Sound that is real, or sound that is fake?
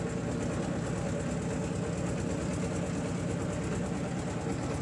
real